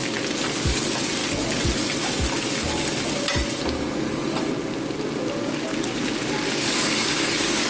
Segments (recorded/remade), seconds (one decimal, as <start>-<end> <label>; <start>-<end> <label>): 0.0-0.6 recorded; 0.6-1.2 remade; 1.2-5.3 recorded; 5.3-5.7 remade; 5.7-6.5 recorded; 6.5-7.7 remade